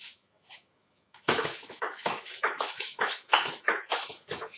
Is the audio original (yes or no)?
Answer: no